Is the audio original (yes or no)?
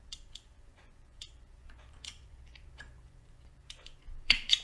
no